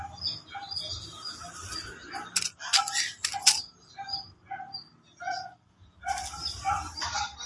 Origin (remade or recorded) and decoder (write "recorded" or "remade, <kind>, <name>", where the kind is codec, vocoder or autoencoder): recorded